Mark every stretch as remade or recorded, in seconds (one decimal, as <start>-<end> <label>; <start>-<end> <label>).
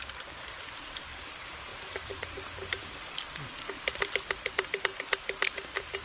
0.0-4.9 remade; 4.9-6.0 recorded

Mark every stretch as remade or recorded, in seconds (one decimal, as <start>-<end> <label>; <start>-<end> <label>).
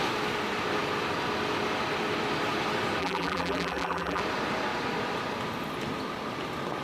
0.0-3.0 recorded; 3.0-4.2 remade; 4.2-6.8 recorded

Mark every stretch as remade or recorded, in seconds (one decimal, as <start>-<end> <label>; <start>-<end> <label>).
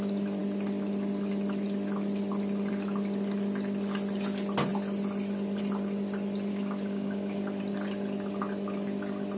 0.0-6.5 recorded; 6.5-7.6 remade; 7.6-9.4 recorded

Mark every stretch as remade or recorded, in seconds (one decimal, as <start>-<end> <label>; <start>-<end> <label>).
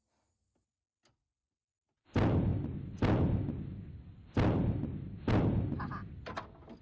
0.0-6.8 remade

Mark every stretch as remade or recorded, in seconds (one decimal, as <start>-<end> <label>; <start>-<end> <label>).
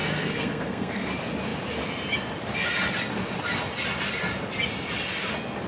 0.0-1.1 remade; 1.1-5.7 recorded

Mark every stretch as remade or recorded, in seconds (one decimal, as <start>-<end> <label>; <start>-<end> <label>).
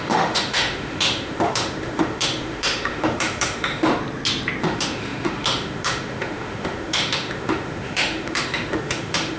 0.0-3.9 remade; 3.9-4.6 recorded; 4.6-9.4 remade